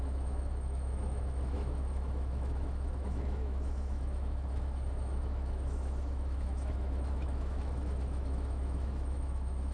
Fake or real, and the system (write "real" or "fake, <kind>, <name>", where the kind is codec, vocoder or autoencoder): fake, autoencoder, DAC-VAE